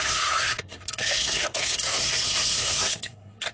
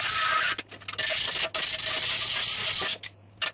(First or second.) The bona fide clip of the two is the second